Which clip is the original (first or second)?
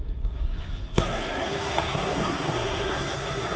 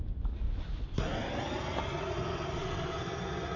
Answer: second